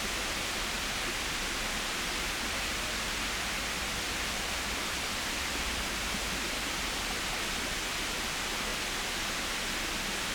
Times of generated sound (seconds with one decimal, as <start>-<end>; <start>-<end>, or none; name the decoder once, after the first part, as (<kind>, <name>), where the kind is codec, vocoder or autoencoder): none